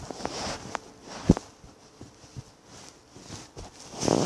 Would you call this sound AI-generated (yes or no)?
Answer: no